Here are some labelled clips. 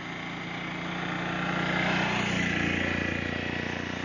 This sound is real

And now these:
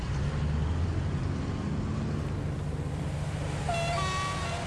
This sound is real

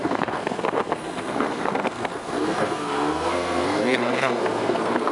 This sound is fake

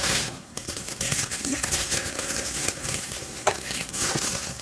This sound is fake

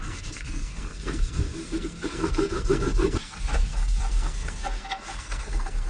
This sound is fake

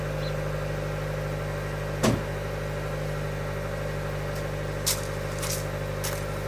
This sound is real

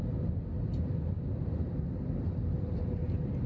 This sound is real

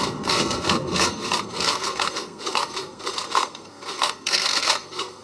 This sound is fake